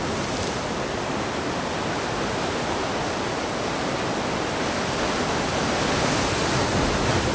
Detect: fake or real real